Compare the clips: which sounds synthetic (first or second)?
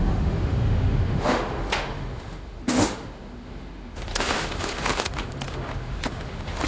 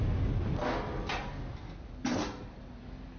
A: first